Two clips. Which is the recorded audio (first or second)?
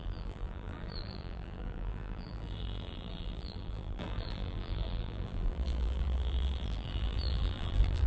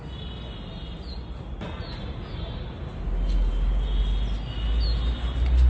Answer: second